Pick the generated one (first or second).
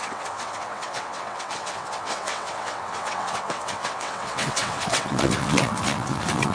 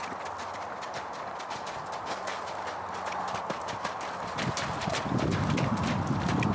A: first